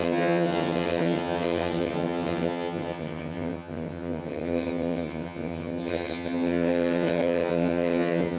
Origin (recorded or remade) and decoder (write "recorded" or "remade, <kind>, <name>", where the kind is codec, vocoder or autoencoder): remade, vocoder, HiFi-GAN